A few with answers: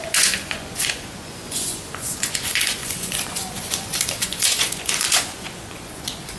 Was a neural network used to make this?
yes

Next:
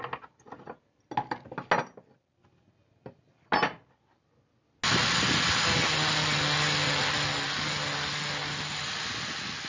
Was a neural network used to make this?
no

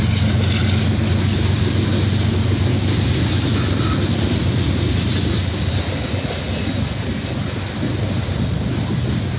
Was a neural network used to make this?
no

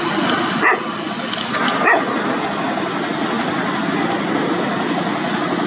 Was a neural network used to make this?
no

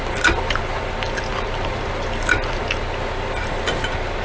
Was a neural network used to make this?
no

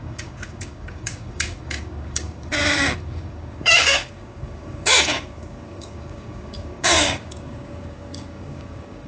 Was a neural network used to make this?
yes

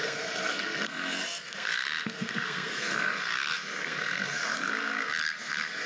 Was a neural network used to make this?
yes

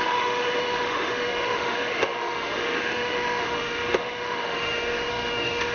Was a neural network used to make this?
yes